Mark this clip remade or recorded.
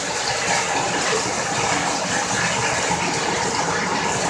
recorded